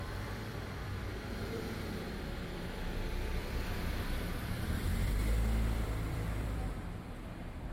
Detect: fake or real fake